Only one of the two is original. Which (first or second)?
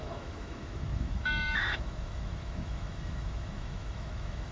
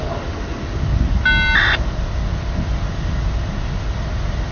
second